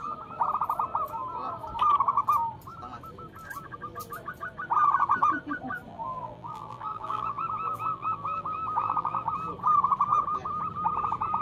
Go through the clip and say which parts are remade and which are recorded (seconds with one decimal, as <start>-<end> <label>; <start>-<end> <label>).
0.0-5.9 recorded; 5.9-9.3 remade; 9.3-11.4 recorded